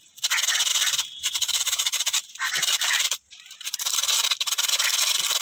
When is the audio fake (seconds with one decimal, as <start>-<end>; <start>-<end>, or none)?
0.7-3.9